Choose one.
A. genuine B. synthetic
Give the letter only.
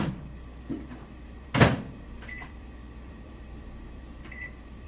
B